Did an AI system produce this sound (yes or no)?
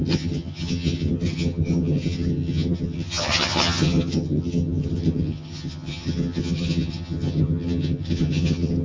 yes